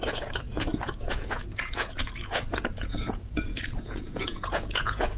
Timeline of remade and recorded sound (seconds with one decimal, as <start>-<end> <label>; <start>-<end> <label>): 0.0-5.2 remade